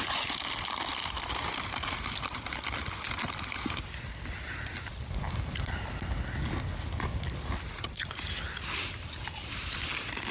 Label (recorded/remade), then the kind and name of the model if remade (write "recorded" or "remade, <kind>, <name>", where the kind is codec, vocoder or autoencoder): recorded